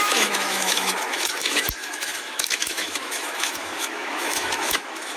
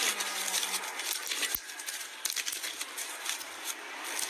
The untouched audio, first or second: second